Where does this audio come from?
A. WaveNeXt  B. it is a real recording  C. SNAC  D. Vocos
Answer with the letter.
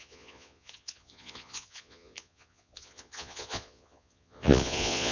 D